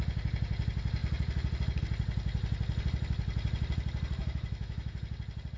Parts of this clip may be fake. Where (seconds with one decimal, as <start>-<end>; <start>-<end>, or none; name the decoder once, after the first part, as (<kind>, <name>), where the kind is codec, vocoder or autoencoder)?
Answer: 4.2-5.0 (autoencoder, DAC-VAE)